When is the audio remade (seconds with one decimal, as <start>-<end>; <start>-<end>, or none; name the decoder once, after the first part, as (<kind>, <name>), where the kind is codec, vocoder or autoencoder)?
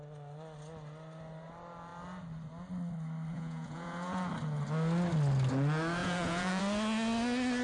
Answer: 3.3-4.3 (vocoder, Vocos); 6.0-6.6